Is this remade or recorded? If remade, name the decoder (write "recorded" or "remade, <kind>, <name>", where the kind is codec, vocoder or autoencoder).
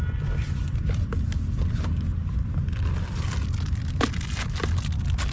recorded